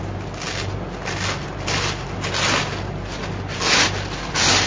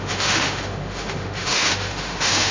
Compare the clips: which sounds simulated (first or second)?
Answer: second